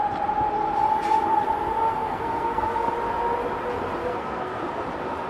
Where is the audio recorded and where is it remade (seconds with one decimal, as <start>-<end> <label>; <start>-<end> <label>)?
0.0-1.8 recorded; 1.8-2.9 remade; 2.9-4.0 recorded; 4.0-4.6 remade; 4.6-5.3 recorded